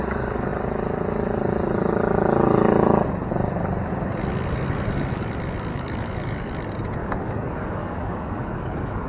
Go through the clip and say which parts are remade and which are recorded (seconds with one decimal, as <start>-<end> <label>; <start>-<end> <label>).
0.0-5.7 recorded; 5.7-6.5 remade; 6.5-7.0 recorded; 7.0-9.1 remade